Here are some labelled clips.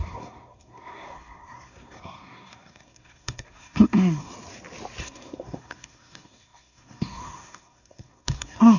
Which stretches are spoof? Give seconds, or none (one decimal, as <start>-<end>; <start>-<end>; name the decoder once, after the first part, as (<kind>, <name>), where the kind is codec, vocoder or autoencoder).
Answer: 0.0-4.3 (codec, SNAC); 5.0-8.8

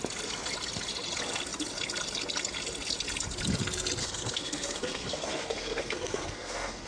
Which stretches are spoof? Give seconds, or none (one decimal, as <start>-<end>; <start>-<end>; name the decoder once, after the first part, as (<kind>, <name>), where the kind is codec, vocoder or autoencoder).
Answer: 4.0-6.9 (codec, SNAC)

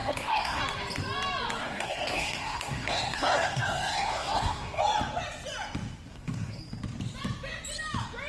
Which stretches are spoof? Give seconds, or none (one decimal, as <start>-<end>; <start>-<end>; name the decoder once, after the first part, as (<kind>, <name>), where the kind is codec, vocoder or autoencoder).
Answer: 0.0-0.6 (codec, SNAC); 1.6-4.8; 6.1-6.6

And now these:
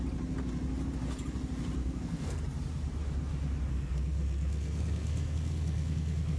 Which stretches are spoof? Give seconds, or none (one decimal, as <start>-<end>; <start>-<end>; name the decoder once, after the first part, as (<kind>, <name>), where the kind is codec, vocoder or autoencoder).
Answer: 1.8-2.4 (codec, SNAC); 3.7-6.4

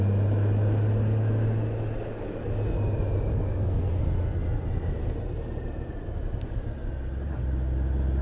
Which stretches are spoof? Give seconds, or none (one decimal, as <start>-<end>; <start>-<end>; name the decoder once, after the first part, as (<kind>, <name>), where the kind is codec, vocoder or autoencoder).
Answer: 3.3-4.0 (codec, SNAC)

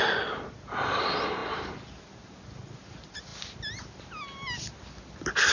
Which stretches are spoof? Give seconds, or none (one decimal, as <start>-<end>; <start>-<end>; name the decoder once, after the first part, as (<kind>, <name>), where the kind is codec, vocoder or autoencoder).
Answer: none